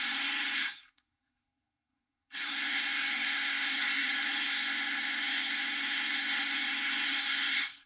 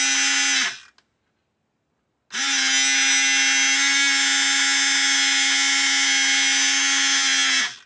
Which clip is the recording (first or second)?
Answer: second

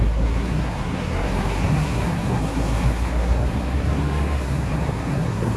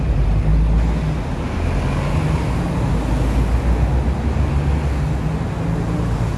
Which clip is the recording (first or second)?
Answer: second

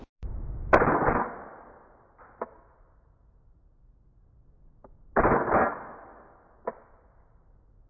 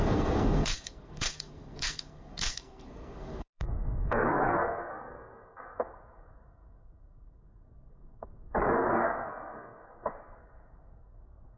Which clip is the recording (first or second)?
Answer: first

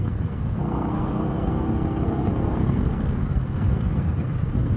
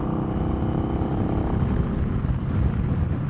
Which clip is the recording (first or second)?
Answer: second